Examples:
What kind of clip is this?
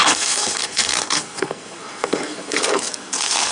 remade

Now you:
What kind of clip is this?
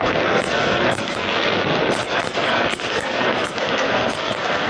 remade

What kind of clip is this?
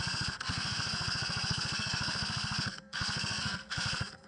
remade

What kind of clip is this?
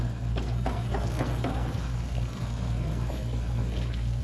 remade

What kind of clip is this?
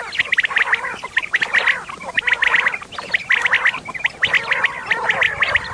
recorded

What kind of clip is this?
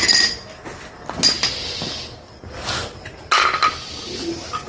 recorded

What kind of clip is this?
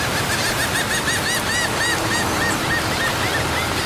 recorded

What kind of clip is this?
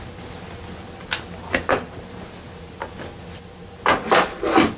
recorded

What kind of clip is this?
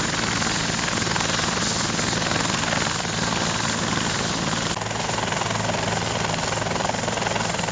recorded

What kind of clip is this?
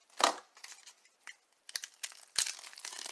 recorded